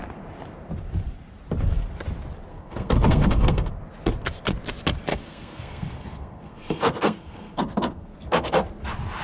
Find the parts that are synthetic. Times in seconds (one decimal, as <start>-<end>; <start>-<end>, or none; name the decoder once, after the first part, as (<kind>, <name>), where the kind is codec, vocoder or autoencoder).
2.5-3.7 (codec, SNAC); 5.1-8.7